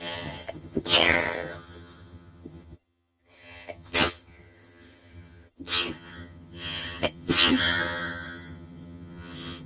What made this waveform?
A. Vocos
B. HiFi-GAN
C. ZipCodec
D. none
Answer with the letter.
B